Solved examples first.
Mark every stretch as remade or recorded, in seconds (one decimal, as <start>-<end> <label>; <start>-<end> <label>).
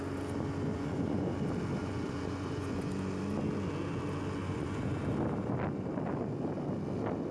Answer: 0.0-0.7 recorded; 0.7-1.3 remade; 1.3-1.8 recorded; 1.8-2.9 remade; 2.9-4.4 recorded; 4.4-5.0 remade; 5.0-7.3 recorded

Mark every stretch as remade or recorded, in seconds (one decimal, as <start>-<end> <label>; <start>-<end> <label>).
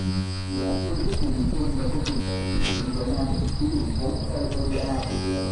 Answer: 0.0-0.9 remade; 0.9-2.2 recorded; 2.2-2.8 remade; 2.8-5.1 recorded; 5.1-5.5 remade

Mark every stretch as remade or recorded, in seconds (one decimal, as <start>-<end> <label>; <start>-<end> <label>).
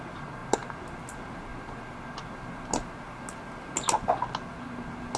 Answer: 0.0-5.2 recorded